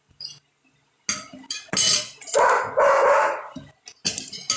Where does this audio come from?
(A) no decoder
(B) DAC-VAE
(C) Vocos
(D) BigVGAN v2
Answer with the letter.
A